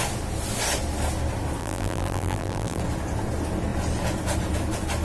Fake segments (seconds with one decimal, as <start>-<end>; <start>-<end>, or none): 1.6-2.8